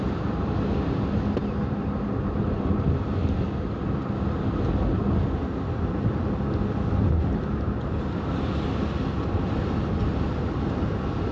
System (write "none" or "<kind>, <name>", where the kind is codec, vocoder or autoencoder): none